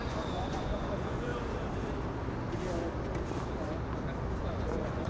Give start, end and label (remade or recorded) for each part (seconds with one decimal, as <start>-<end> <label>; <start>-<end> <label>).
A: 0.0-1.3 remade; 1.3-4.4 recorded; 4.4-5.1 remade